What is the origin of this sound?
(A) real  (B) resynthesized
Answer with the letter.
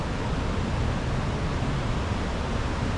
A